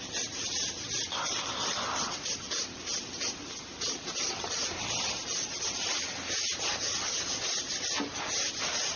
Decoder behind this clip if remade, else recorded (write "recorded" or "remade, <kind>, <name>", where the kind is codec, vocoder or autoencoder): recorded